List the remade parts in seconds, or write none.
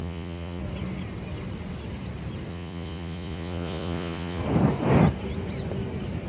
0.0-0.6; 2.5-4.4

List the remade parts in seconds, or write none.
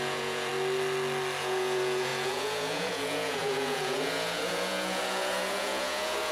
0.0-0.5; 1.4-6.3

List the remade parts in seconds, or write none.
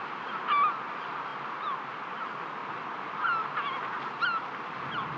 none